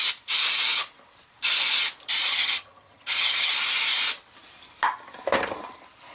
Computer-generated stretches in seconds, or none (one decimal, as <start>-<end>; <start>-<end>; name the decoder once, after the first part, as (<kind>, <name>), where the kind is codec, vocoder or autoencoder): 2.3-3.5 (vocoder, HiFi-GAN)

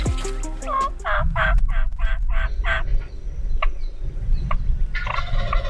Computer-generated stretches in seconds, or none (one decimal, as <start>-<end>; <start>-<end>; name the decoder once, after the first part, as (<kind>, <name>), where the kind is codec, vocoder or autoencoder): none

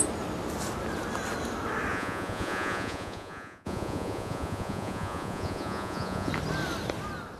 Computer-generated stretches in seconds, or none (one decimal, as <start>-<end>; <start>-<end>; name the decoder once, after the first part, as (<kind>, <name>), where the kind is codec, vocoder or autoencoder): 1.9-6.3 (vocoder, Vocos)

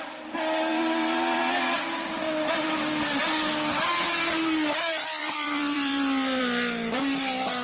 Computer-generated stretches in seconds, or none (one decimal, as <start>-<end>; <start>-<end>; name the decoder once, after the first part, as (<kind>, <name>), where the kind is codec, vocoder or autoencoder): 0.7-1.4 (vocoder, BigVGAN v2); 5.2-6.4

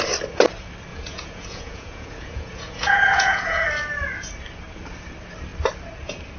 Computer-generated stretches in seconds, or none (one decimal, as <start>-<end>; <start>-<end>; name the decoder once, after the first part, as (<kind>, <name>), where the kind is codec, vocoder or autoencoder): 0.9-3.6 (vocoder, Vocos)